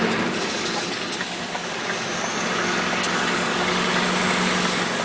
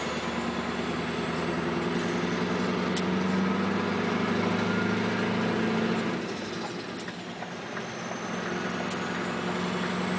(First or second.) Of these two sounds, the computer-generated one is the first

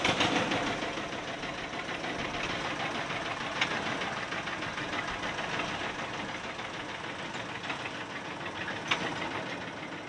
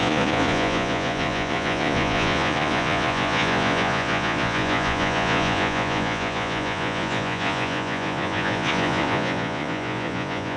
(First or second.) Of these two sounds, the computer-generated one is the second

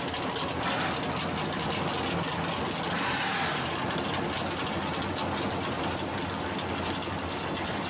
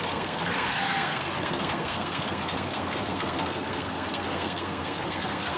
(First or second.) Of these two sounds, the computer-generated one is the second